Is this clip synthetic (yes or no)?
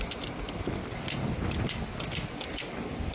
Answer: no